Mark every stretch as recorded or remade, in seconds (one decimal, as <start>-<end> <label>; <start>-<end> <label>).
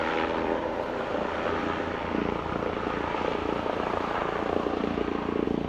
0.0-1.1 remade; 1.1-2.5 recorded; 2.5-4.2 remade; 4.2-5.7 recorded